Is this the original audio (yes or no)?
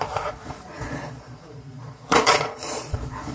no